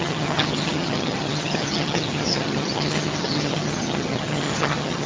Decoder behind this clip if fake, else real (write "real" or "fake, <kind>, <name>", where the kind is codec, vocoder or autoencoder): fake, vocoder, HiFi-GAN